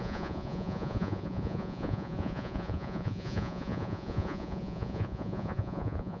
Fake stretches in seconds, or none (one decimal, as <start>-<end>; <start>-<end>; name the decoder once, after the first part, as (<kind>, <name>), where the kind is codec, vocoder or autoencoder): 0.0-6.2 (vocoder, Vocos)